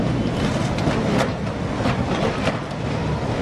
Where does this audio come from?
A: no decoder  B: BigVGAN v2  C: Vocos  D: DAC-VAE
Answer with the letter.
A